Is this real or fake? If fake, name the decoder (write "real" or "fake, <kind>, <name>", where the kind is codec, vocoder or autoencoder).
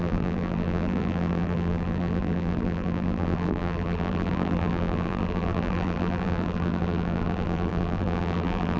fake, vocoder, BigVGAN v2